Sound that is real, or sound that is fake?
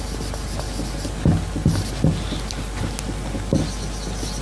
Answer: real